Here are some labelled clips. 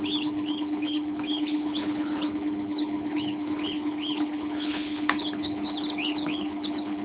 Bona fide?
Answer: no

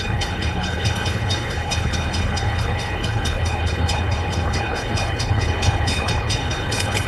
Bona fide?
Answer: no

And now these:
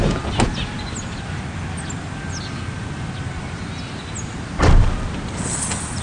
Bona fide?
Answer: yes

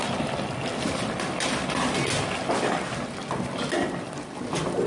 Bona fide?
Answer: yes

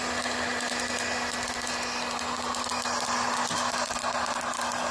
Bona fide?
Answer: yes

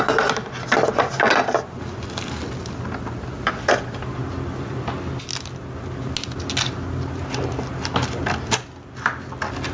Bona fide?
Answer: yes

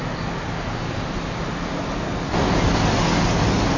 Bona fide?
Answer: yes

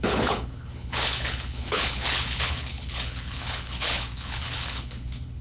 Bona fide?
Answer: no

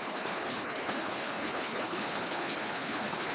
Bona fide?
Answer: no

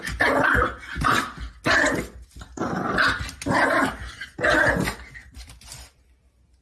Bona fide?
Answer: yes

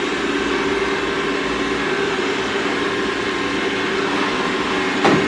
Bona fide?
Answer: yes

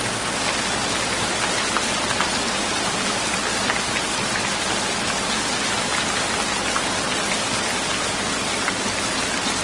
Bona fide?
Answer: yes